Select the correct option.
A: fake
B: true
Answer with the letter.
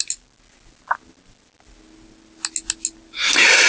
B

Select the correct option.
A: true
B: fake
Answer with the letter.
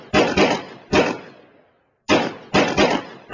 A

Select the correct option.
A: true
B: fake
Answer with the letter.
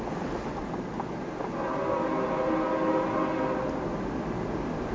A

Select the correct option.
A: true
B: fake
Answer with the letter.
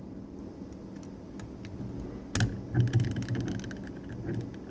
A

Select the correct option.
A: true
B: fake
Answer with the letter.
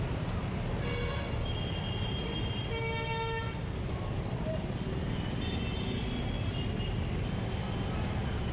A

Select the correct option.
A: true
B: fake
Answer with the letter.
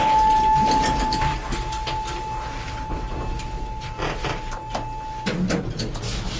A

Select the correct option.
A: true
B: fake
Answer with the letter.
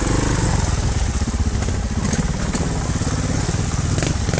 A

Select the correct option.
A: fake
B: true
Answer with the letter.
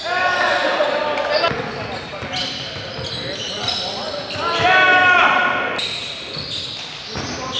B